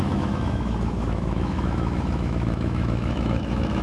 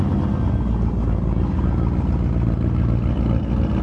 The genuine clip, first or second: second